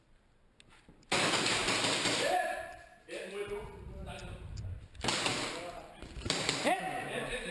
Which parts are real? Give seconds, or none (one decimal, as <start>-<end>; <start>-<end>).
0.0-1.6; 3.3-4.0